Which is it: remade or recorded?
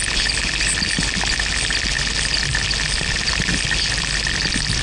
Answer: recorded